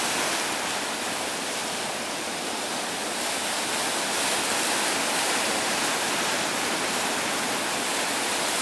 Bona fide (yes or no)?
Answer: yes